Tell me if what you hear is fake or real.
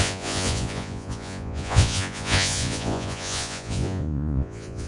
fake